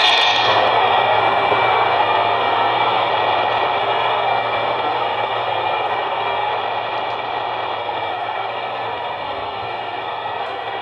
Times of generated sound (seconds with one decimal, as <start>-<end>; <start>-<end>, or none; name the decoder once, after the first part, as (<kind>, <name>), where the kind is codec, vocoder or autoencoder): 0.0-3.1 (codec, SNAC); 3.8-6.5; 7.8-10.8